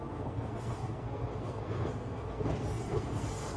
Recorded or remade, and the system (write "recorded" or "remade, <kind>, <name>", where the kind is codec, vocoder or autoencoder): remade, codec, SNAC